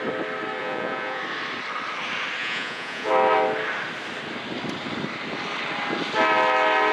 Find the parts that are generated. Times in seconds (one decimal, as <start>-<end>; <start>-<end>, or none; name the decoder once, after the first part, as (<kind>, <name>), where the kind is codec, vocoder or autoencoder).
0.6-1.2 (vocoder, Vocos); 2.4-3.1